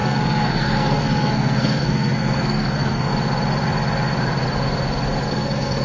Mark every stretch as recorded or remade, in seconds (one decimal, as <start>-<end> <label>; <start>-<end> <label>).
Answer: 0.0-3.1 remade; 3.1-5.3 recorded; 5.3-5.8 remade